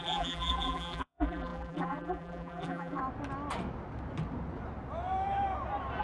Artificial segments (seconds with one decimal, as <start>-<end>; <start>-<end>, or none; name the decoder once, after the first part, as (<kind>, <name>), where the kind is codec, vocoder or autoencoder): 0.0-3.0 (vocoder, BigVGAN v2)